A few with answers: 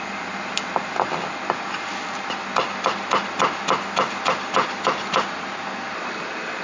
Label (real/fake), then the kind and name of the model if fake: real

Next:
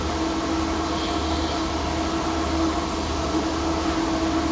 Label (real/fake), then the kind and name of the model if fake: real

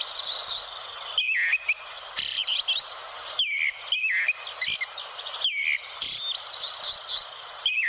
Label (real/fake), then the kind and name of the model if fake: real